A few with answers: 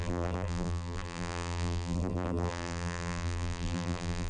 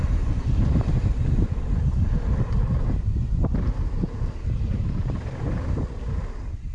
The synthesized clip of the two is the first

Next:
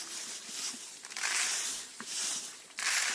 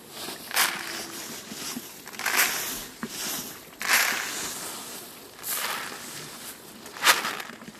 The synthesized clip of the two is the first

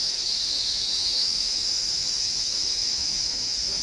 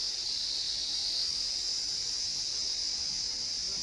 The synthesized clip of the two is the first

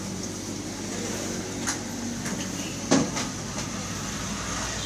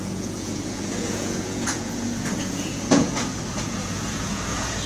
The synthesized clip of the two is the second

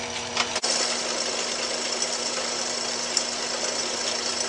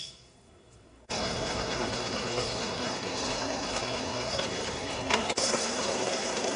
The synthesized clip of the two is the second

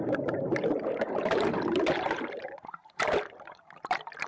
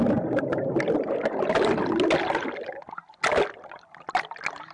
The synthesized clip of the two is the first